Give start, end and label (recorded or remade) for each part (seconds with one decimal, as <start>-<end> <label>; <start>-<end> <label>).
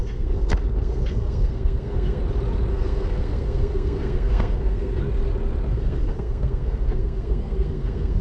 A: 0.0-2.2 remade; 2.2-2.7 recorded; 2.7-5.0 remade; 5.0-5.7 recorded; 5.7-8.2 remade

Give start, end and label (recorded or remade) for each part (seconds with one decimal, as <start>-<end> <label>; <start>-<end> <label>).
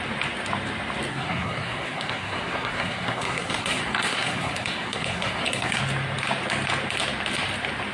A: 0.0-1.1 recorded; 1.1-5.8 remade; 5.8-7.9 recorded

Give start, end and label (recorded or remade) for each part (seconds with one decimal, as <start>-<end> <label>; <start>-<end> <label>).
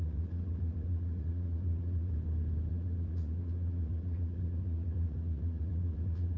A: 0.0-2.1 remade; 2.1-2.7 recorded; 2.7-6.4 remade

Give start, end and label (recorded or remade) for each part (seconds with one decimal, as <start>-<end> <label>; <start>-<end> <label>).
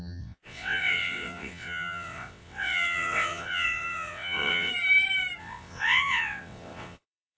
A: 0.0-4.7 remade; 4.7-5.4 recorded; 5.4-7.4 remade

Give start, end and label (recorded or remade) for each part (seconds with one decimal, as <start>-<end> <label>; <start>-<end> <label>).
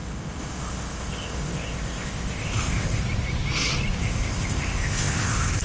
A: 0.0-3.0 remade; 3.0-4.0 recorded; 4.0-5.6 remade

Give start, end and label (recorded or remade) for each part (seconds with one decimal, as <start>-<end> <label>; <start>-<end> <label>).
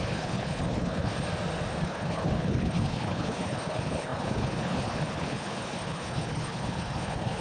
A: 0.0-1.1 remade; 1.1-1.8 recorded; 1.8-7.4 remade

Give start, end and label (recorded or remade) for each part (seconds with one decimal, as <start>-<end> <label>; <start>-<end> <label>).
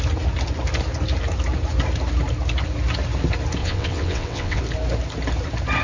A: 0.0-3.6 recorded; 3.6-4.6 remade; 4.6-5.8 recorded